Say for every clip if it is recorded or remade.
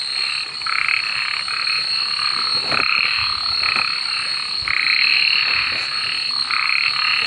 recorded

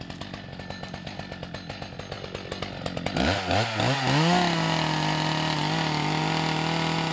recorded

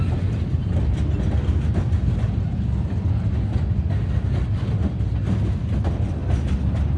recorded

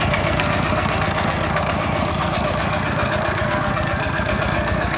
remade